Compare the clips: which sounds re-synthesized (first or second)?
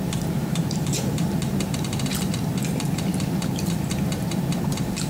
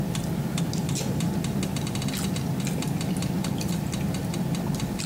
first